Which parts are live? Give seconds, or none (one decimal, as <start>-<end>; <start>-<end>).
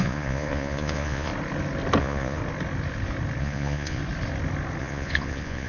1.3-2.0; 2.4-3.4; 4.0-4.8